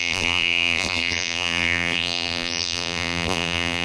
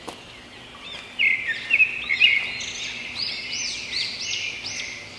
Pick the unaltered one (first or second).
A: second